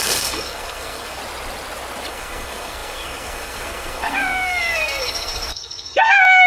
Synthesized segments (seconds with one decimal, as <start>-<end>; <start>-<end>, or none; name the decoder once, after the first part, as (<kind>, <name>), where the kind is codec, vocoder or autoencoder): 0.0-1.2 (codec, SNAC); 2.1-6.5